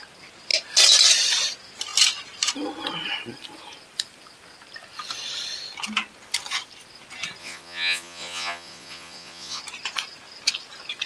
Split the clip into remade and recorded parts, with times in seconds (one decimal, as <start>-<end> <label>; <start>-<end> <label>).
0.0-7.4 recorded; 7.4-9.6 remade; 9.6-11.1 recorded